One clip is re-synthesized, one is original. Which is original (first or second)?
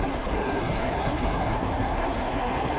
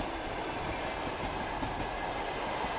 second